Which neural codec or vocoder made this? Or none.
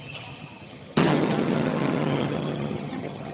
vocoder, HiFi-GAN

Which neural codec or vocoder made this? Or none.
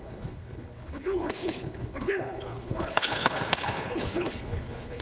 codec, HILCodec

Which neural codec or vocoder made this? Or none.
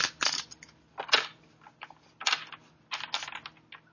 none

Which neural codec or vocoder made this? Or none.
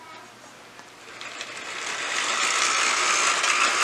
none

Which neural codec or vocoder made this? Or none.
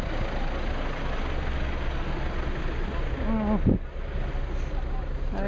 none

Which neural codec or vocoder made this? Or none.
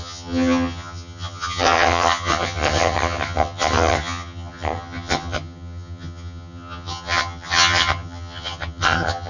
vocoder, HiFi-GAN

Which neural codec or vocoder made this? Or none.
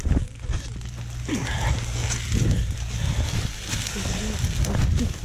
none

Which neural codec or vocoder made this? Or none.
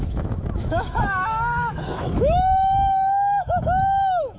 autoencoder, DAC-VAE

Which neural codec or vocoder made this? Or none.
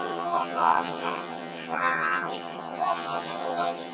vocoder, HiFi-GAN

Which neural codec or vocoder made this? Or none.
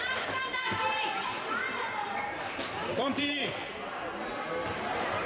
vocoder, BigVGAN v2